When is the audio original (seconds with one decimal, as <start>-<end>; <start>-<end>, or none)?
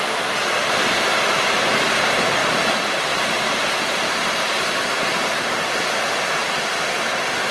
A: 0.0-2.4; 5.9-7.5